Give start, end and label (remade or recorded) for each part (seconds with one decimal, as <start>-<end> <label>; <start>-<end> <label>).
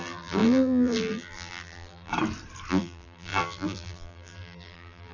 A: 0.0-2.1 remade; 2.1-2.7 recorded; 2.7-5.1 remade